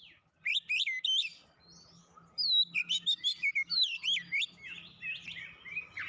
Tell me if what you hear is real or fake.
real